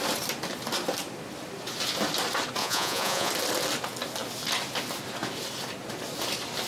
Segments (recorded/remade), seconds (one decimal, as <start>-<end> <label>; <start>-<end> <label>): 0.0-2.6 recorded; 2.6-3.3 remade; 3.3-6.7 recorded